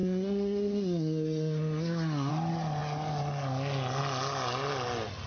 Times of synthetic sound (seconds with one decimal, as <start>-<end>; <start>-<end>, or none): 0.0-2.3